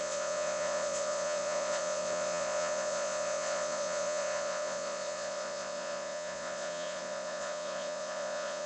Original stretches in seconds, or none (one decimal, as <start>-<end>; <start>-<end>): none